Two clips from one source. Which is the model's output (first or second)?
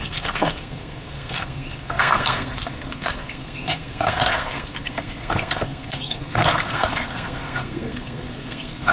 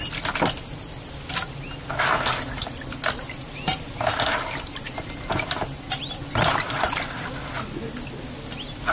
first